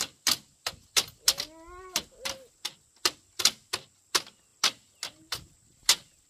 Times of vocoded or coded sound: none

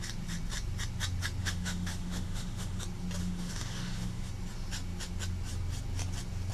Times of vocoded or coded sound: 1.4-2.8; 3.2-4.3

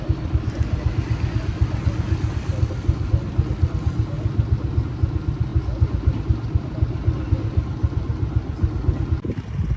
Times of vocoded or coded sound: none

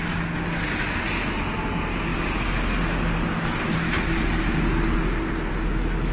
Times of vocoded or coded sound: none